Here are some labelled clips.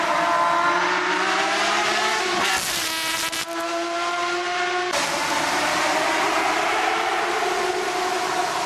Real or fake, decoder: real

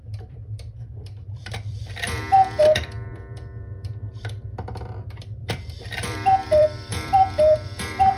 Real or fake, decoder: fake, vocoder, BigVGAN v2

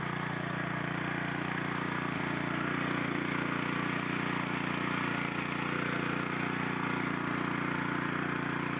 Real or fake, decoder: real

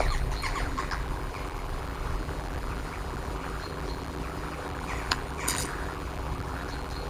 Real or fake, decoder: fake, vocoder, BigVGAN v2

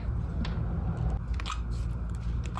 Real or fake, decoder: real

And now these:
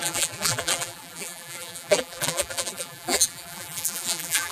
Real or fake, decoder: fake, vocoder, BigVGAN v2